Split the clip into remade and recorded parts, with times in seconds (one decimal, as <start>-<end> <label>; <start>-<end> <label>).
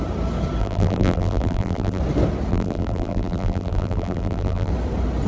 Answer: 0.0-0.6 recorded; 0.6-2.0 remade; 2.0-2.5 recorded; 2.5-4.7 remade; 4.7-5.3 recorded